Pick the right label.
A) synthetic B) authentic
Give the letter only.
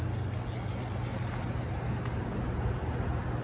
B